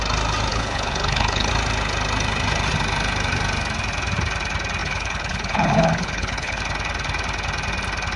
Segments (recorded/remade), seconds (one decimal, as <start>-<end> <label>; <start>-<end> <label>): 0.0-0.5 recorded; 0.5-1.5 remade; 1.5-4.8 recorded; 4.8-6.6 remade; 6.6-8.2 recorded